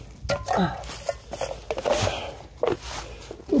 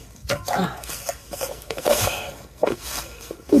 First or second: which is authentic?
first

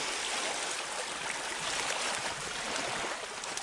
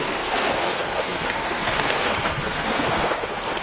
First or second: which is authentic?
first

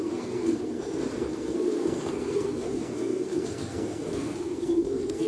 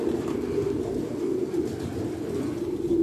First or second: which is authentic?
second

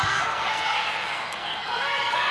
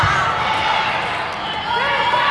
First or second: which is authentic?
second